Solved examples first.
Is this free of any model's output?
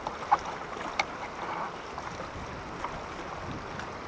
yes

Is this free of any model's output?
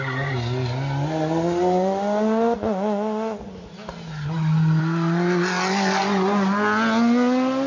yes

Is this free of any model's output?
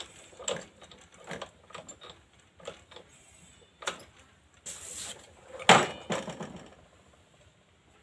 yes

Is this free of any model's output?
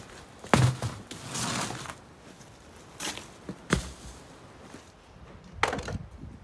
yes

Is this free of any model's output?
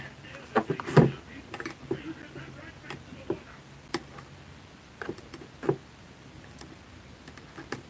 yes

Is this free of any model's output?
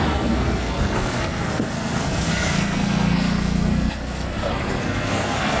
no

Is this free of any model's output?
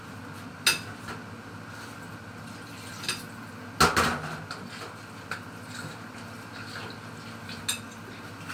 yes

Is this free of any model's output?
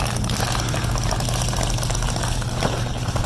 yes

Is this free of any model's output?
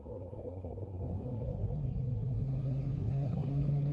no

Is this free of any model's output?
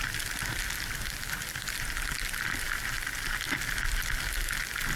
yes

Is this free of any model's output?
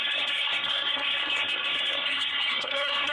no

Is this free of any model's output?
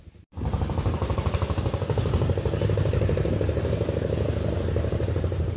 yes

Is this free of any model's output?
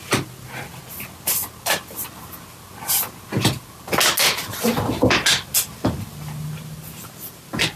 yes